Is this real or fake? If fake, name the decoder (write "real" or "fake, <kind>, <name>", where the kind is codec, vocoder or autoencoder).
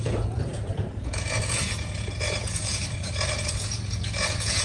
fake, vocoder, Vocos